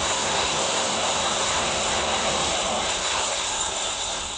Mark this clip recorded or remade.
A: remade